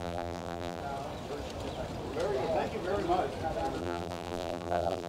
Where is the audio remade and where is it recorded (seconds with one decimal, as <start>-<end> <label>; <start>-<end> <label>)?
0.0-0.8 remade; 0.8-3.8 recorded; 3.8-5.1 remade